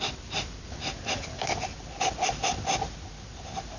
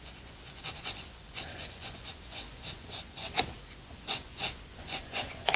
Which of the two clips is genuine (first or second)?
first